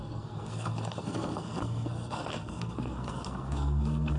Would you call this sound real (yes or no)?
no